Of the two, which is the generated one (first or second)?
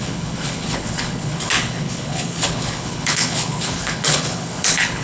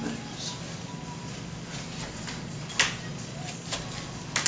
first